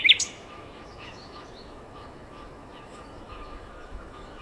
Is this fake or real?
fake